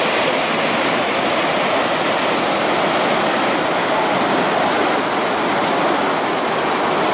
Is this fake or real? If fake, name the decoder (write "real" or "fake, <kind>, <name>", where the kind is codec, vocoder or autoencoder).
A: real